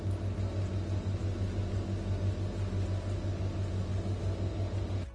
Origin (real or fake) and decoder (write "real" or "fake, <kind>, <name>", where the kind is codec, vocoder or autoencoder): real